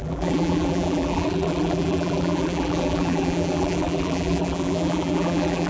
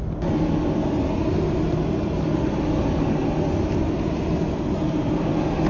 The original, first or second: second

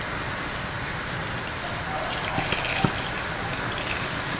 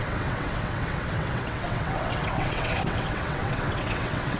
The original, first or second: first